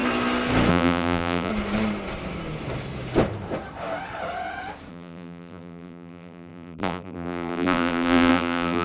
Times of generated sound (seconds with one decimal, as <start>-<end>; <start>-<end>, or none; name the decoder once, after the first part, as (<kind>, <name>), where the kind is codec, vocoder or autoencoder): 0.7-1.5 (vocoder, BigVGAN v2); 4.9-8.8